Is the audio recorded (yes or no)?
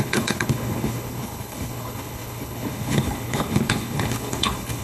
no